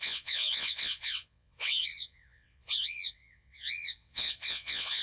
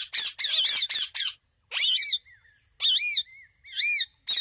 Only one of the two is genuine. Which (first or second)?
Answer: second